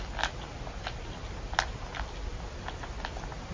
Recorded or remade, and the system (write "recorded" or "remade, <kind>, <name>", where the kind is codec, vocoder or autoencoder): recorded